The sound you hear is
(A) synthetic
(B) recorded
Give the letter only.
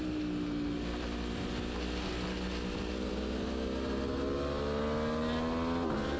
B